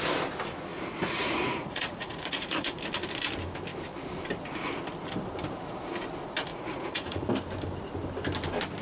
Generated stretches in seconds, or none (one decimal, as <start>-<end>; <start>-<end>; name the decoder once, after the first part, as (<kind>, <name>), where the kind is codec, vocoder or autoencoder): 0.7-2.8 (vocoder, Vocos); 6.5-7.2